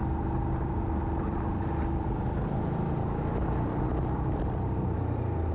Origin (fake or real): fake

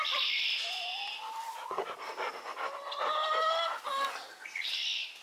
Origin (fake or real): real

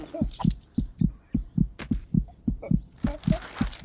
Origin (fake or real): real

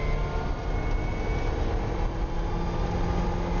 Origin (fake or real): real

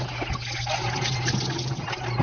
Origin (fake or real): real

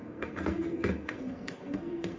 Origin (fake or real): fake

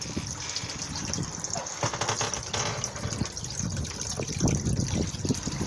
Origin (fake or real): real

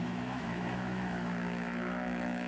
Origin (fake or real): fake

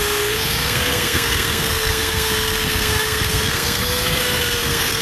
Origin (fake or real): fake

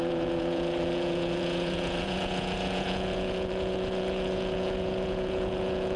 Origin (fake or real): fake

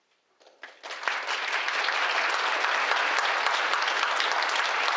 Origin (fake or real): real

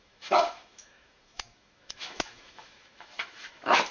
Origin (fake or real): fake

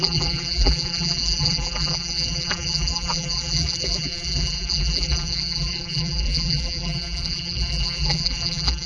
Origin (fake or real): fake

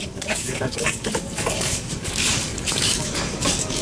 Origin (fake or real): fake